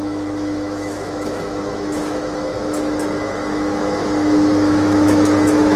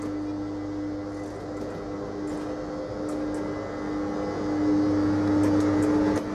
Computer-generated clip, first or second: first